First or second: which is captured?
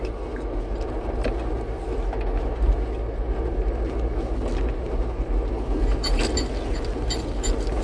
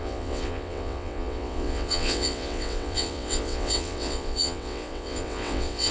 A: first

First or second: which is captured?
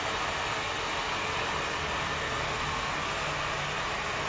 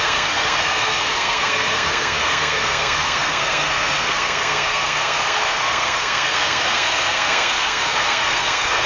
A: first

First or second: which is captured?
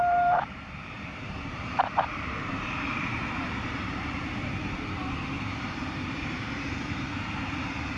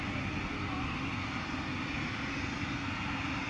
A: second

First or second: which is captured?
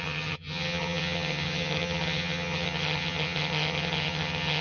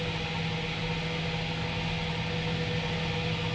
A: second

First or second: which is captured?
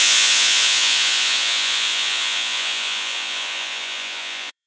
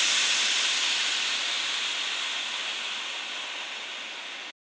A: second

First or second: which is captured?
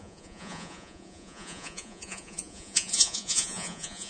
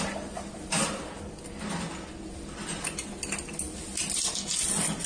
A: second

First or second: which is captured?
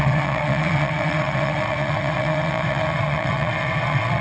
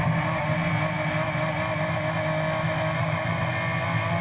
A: second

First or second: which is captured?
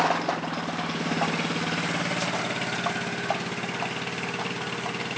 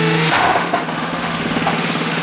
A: first